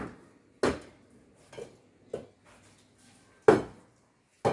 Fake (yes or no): no